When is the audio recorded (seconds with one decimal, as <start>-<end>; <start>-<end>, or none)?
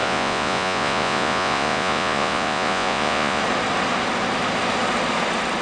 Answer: 3.4-5.6